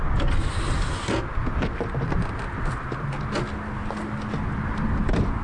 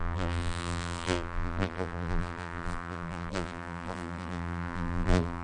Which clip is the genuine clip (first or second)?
first